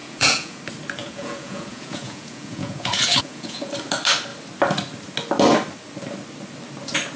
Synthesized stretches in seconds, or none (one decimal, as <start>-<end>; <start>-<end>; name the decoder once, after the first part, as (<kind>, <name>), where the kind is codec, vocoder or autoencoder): 0.0-0.6 (vocoder, Vocos); 1.0-3.7